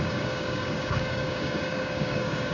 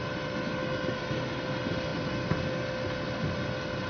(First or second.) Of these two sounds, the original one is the second